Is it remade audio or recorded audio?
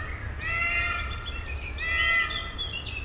recorded